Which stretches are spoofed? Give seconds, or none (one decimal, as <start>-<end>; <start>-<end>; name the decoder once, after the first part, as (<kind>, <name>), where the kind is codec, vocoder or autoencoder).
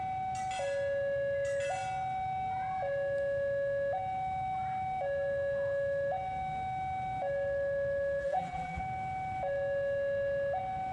8.2-8.8 (vocoder, BigVGAN v2)